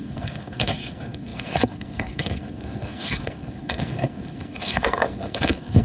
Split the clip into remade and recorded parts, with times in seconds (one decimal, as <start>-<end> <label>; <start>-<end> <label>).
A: 0.0-5.8 remade